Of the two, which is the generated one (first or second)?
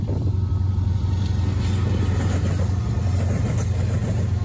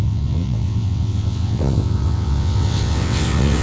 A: second